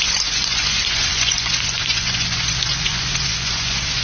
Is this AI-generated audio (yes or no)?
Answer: yes